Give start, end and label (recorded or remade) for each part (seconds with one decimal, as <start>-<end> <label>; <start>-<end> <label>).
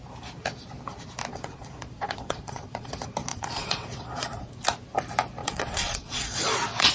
0.0-1.3 recorded; 1.3-2.9 remade; 2.9-3.3 recorded; 3.3-4.5 remade; 4.5-5.4 recorded; 5.4-6.9 remade